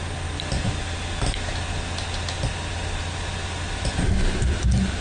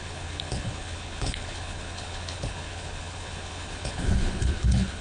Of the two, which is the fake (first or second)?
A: second